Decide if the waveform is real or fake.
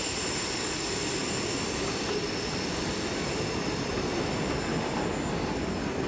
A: real